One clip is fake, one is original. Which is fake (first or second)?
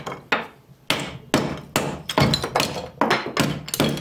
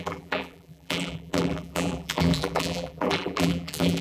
second